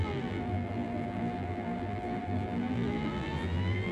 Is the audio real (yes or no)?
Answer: no